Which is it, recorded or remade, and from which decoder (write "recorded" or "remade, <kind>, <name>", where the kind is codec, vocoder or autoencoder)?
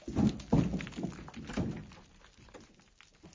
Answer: recorded